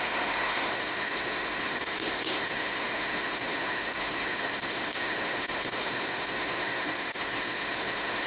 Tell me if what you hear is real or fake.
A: fake